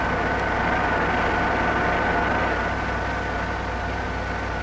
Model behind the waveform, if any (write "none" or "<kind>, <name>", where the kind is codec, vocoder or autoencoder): none